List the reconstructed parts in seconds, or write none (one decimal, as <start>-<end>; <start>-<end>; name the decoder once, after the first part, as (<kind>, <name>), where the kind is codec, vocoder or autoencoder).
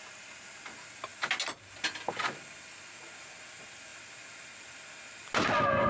none